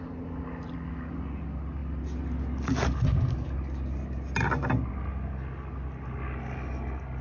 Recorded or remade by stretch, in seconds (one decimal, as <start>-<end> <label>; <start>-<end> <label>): 0.0-7.2 recorded